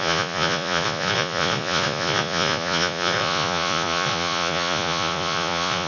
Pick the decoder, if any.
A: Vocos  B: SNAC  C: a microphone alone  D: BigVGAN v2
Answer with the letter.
A